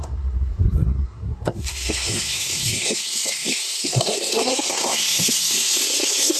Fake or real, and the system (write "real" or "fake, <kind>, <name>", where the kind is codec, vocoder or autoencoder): fake, codec, SNAC